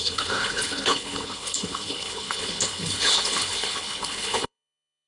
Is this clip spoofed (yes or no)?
yes